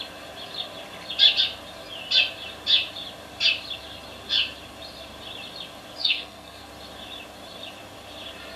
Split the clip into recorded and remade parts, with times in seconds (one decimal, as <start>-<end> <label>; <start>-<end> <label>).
0.0-6.0 recorded; 6.0-6.7 remade; 6.7-8.6 recorded